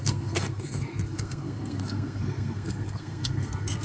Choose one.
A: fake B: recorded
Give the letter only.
A